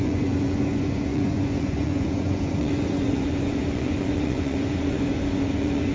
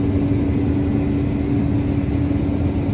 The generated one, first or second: first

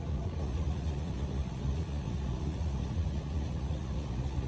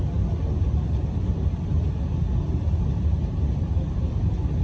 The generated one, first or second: first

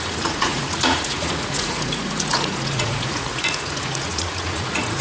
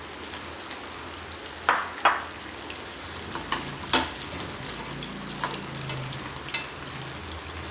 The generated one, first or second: first